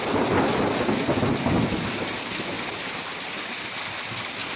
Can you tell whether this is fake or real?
real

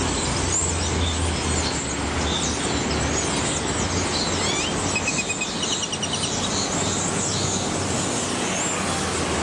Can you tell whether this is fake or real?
real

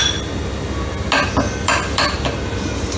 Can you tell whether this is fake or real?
real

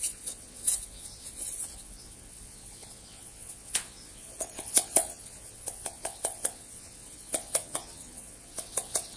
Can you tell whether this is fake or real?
fake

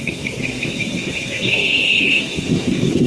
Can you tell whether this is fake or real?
fake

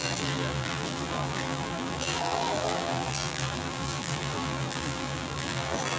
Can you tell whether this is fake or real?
fake